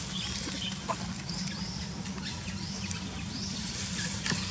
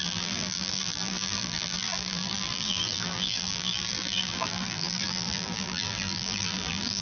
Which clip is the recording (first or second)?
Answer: first